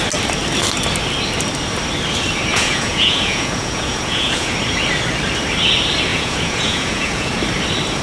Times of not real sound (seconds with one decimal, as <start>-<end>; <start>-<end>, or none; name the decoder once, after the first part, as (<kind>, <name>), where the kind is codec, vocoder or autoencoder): 2.5-4.5 (vocoder, Vocos); 6.1-7.3

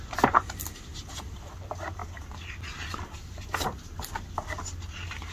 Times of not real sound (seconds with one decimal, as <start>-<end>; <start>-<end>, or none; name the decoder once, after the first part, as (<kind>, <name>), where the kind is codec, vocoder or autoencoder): 0.9-1.5 (vocoder, BigVGAN v2)

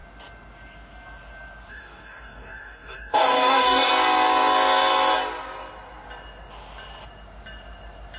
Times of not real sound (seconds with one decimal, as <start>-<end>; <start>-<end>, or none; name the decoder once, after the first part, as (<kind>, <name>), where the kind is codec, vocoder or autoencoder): 1.7-3.9 (codec, DAC)

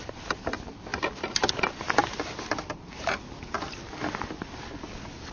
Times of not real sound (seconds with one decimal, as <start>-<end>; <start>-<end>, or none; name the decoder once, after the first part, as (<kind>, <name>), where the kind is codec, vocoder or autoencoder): none

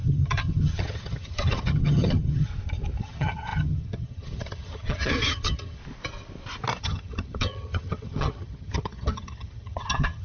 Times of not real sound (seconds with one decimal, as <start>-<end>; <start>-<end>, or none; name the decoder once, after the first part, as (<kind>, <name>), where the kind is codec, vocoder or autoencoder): 0.0-2.5 (vocoder, HiFi-GAN); 3.0-5.8; 6.8-10.2